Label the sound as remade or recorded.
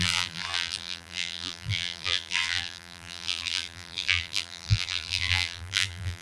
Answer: remade